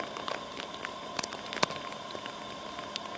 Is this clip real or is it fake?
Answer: real